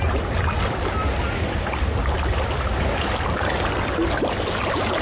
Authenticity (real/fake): real